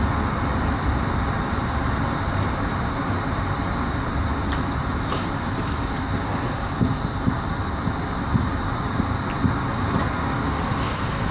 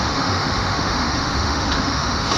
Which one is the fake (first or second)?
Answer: second